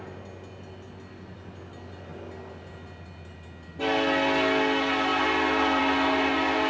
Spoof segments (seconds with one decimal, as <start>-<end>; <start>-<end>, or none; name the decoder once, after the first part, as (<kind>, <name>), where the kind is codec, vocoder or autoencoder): none